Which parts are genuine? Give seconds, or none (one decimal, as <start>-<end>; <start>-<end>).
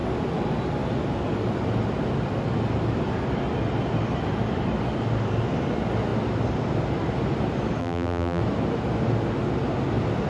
0.0-7.8; 8.4-10.3